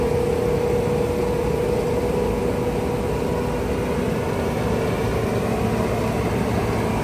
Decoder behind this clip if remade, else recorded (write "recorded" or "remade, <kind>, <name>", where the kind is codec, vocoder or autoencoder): recorded